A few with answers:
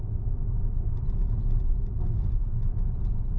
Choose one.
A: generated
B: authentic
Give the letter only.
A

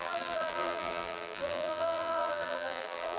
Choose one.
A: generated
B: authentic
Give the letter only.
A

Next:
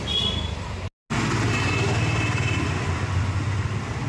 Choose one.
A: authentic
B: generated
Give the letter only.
A